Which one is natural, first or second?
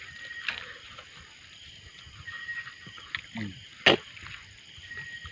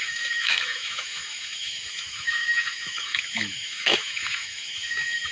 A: first